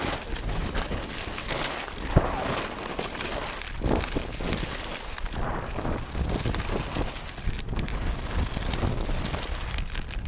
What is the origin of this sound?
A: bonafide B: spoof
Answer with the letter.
A